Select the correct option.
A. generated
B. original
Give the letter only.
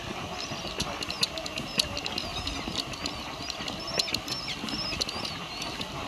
B